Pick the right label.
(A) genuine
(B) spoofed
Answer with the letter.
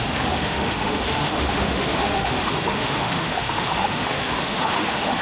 B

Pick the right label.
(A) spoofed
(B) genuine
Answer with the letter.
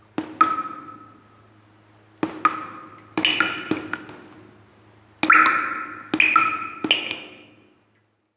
B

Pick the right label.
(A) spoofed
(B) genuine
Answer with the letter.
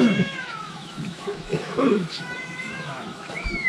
A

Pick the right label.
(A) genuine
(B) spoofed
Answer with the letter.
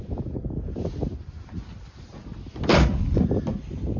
A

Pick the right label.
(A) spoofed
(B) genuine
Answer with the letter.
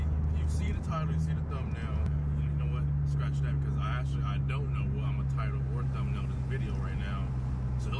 B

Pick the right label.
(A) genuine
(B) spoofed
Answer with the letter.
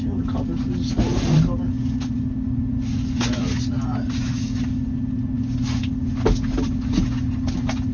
A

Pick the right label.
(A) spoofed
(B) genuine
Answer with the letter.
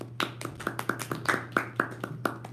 B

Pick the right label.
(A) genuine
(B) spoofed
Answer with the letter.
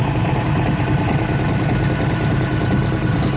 B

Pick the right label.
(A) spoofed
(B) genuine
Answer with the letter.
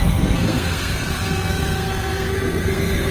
A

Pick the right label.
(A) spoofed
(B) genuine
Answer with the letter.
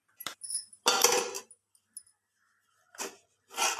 B